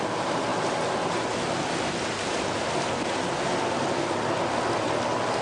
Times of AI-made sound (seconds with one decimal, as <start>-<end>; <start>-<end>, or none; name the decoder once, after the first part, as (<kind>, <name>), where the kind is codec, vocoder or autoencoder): none